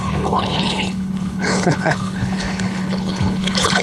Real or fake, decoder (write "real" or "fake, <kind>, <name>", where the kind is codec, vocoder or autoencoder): fake, codec, HILCodec